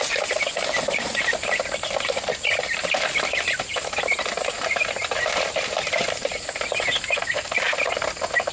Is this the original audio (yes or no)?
no